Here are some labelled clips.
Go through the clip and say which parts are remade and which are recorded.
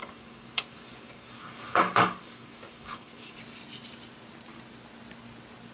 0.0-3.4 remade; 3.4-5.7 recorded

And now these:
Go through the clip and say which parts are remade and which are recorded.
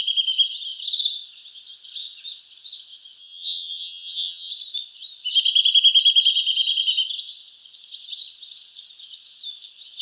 0.0-3.2 recorded; 3.2-4.5 remade; 4.5-10.0 recorded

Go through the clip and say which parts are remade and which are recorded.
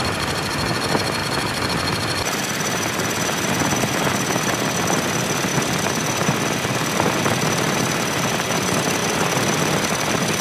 0.0-1.2 recorded; 1.2-2.2 remade; 2.2-5.5 recorded; 5.5-6.3 remade; 6.3-10.4 recorded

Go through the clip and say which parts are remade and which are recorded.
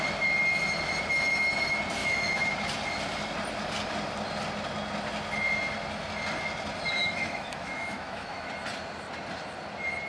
0.0-2.0 recorded; 2.0-2.5 remade; 2.5-7.0 recorded; 7.0-8.5 remade; 8.5-10.1 recorded